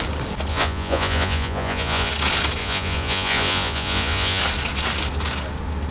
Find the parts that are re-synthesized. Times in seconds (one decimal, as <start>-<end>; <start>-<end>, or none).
0.5-2.1; 2.6-4.4